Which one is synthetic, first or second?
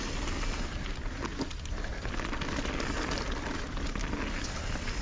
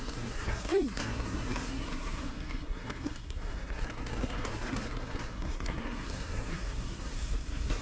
second